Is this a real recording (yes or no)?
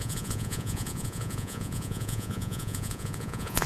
no